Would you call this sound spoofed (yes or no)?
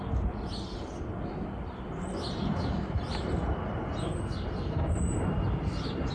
no